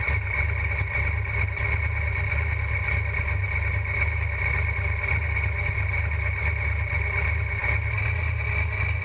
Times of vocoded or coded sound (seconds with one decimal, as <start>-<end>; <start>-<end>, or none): none